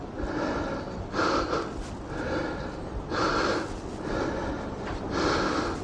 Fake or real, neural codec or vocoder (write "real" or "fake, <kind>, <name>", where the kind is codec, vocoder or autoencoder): real